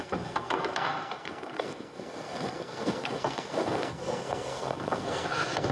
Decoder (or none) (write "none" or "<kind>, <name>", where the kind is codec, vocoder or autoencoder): codec, SNAC